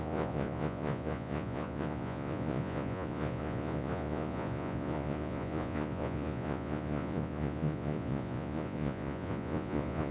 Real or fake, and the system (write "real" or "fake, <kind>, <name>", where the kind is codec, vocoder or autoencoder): fake, vocoder, Vocos